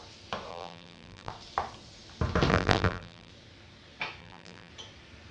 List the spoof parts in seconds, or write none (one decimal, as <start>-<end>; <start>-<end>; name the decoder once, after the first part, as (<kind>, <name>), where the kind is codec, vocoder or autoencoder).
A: 0.5-1.3 (vocoder, BigVGAN v2); 2.5-3.3; 4.2-4.7